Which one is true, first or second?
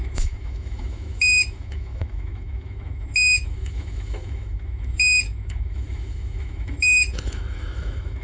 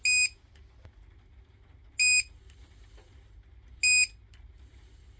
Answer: second